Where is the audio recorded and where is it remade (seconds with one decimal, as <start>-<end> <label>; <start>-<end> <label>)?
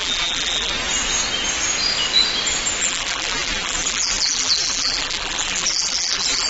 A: 0.0-0.7 remade; 0.7-2.8 recorded; 2.8-6.5 remade